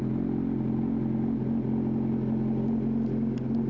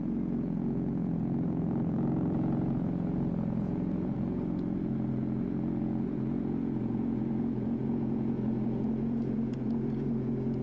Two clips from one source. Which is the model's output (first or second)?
second